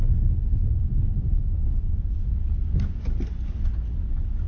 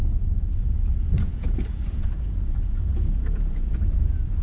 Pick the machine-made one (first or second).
second